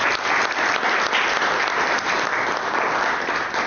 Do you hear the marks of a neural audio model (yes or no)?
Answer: no